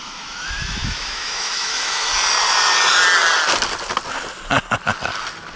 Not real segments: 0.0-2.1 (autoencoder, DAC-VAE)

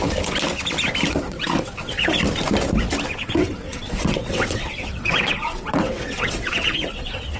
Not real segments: 1.1-2.2 (vocoder, WaveNeXt); 3.2-7.4